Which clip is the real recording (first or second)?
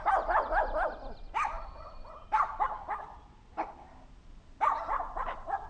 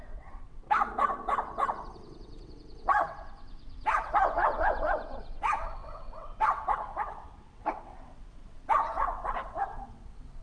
first